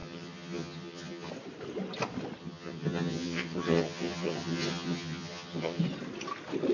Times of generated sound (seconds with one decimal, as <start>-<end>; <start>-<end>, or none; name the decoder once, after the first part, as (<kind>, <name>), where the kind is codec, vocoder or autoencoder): 0.0-1.3 (vocoder, HiFi-GAN); 2.4-5.8